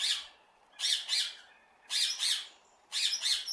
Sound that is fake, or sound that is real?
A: real